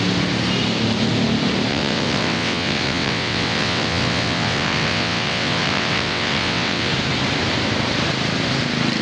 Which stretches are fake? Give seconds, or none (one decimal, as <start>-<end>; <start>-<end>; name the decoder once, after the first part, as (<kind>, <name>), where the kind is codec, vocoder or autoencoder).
1.7-6.9 (vocoder, WaveNeXt)